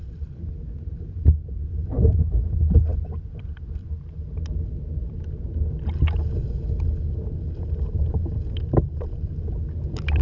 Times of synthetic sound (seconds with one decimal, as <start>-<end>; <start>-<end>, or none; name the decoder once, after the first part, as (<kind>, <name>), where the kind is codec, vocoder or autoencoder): none